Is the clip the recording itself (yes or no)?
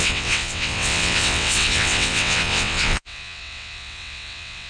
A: no